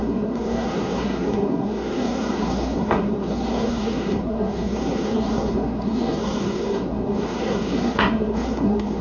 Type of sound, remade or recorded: remade